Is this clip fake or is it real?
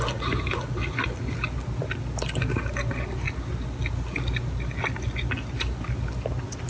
real